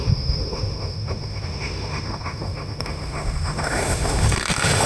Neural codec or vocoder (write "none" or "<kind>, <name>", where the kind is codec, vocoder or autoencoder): autoencoder, DAC-VAE